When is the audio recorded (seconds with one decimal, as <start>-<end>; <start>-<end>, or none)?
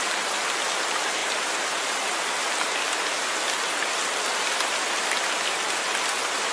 0.0-6.5